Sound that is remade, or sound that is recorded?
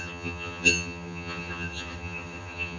remade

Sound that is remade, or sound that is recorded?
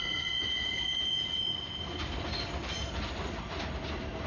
recorded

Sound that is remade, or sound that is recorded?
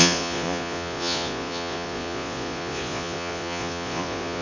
remade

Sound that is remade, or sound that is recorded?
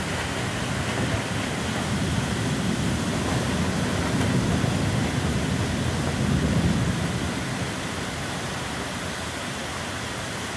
recorded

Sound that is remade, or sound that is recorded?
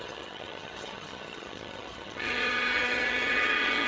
remade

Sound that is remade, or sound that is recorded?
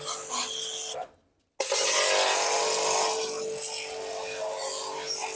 recorded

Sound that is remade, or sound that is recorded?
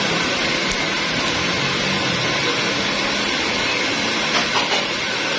recorded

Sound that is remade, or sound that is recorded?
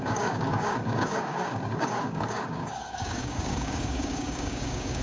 remade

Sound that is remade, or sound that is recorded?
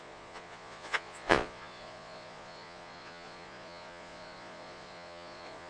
remade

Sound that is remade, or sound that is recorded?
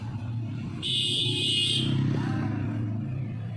recorded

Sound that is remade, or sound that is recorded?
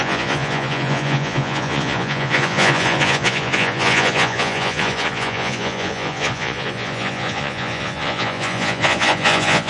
remade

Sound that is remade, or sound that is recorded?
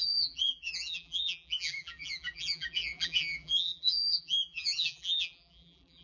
remade